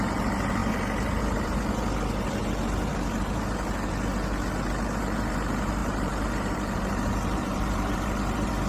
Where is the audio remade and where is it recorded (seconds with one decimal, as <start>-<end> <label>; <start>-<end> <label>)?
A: 0.0-5.8 recorded; 5.8-8.7 remade